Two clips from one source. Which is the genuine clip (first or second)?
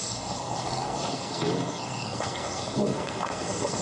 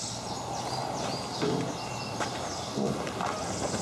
second